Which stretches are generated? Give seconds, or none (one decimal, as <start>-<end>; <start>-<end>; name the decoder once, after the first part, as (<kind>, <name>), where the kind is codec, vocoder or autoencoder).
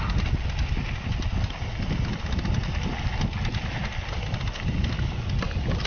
none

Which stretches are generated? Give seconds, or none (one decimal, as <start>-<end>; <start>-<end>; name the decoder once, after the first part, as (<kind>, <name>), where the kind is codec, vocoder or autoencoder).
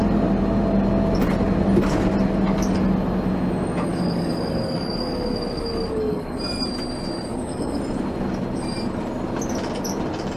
3.9-6.4 (codec, DAC); 7.3-7.8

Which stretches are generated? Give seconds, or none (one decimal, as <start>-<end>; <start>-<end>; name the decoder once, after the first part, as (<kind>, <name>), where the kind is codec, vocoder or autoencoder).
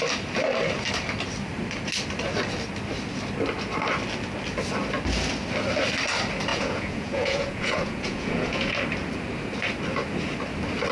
6.5-8.7 (vocoder, Vocos)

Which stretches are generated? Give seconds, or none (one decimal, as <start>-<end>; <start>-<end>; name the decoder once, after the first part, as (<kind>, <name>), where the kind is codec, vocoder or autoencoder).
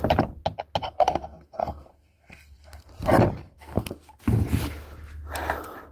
0.8-2.9 (codec, SNAC); 3.4-4.2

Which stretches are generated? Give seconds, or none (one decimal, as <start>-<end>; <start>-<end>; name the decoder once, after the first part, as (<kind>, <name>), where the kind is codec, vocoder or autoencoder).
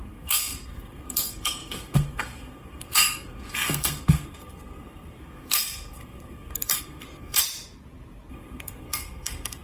0.0-7.4 (codec, SNAC); 8.3-9.6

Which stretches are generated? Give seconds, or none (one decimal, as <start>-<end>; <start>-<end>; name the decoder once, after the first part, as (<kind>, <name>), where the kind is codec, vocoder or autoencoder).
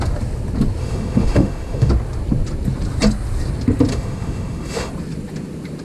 0.8-1.9 (autoencoder, DAC-VAE); 3.9-4.9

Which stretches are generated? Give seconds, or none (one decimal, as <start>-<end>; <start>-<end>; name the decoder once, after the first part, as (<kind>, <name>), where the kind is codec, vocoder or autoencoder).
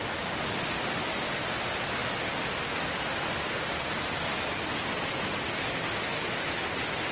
none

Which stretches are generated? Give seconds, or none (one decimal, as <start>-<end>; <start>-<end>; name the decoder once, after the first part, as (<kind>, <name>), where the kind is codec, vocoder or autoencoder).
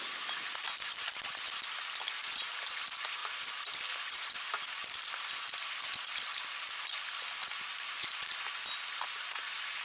none